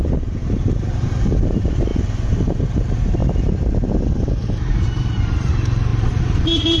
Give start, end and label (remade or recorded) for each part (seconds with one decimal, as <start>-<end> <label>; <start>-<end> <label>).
0.0-1.9 remade; 1.9-2.5 recorded; 2.5-3.2 remade; 3.2-4.5 recorded; 4.5-6.8 remade